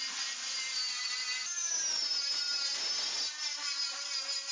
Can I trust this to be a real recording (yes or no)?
yes